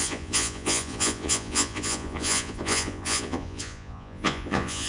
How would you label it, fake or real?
fake